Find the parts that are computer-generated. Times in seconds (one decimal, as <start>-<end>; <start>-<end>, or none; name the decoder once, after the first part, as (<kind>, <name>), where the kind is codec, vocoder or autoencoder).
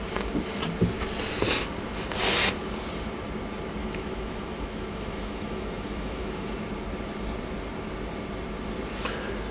3.8-6.5 (autoencoder, DAC-VAE)